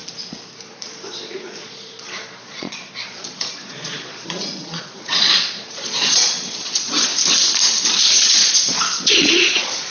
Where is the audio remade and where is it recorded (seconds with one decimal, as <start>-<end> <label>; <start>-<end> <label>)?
0.0-0.6 recorded; 0.6-7.1 remade; 7.1-8.0 recorded; 8.0-9.9 remade